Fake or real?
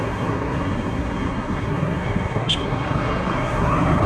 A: fake